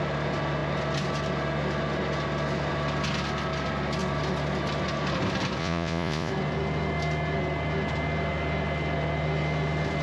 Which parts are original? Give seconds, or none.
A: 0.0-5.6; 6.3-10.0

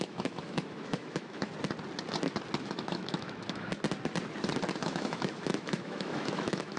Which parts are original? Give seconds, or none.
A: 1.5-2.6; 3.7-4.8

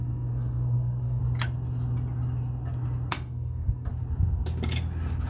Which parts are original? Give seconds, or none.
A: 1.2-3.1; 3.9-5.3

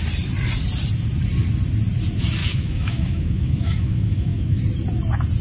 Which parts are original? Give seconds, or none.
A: 0.0-2.4; 4.6-5.4

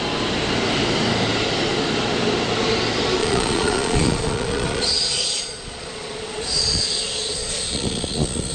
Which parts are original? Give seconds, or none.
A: 0.0-3.2

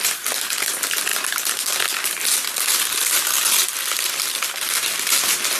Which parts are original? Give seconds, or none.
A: 0.0-5.6